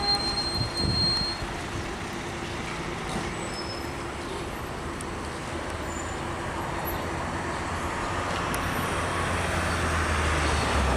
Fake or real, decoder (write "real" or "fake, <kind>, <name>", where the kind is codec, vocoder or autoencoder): real